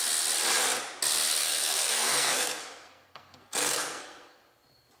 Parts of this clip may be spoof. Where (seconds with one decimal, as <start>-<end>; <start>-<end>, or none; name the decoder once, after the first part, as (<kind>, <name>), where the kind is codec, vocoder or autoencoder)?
1.4-4.4 (codec, SNAC)